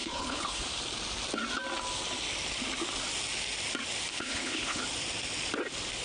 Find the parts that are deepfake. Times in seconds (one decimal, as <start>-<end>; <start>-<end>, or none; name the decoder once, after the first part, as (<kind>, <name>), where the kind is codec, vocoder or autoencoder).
0.0-0.6 (codec, HILCodec); 4.1-4.8